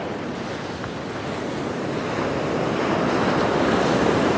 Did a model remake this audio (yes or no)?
no